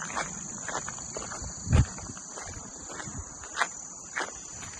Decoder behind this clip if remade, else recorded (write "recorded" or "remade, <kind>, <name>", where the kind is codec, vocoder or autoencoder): recorded